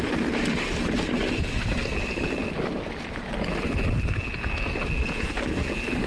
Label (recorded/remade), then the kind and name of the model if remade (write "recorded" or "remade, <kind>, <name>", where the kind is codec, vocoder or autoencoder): recorded